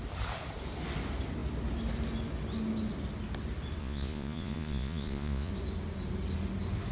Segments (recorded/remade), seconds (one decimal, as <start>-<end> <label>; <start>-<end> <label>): 0.0-3.8 recorded; 3.8-5.5 remade; 5.5-6.9 recorded

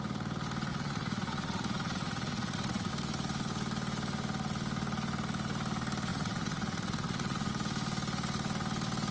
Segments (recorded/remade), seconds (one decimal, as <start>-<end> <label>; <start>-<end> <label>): 0.0-0.7 recorded; 0.7-2.9 remade; 2.9-6.1 recorded; 6.1-7.5 remade; 7.5-9.1 recorded

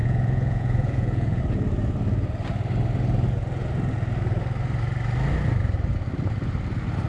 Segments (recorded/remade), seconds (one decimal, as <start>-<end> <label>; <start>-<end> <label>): 0.0-1.4 remade; 1.4-7.1 recorded

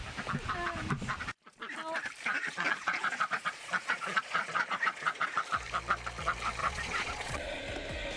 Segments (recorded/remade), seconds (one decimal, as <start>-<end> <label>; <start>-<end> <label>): 0.0-2.3 recorded; 2.3-5.4 remade; 5.4-6.6 recorded; 6.6-7.6 remade; 7.6-8.2 recorded

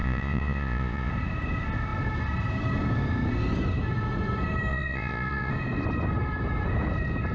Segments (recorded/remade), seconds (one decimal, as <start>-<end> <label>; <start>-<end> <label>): 0.0-1.1 remade; 1.1-4.7 recorded; 4.7-5.5 remade; 5.5-7.3 recorded

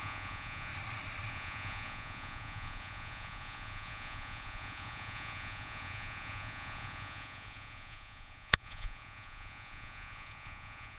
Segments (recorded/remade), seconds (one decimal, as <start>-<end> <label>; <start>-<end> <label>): 0.0-0.7 remade; 0.7-1.3 recorded; 1.3-11.0 remade

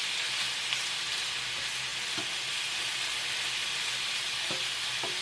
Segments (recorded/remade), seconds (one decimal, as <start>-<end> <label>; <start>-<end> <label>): 0.0-5.2 recorded